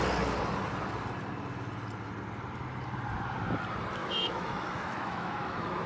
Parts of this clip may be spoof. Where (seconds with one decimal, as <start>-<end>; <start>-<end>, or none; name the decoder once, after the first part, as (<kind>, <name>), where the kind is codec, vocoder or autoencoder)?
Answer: 4.0-5.9 (autoencoder, DAC-VAE)